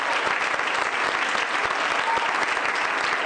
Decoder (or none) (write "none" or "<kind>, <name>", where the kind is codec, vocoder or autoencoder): none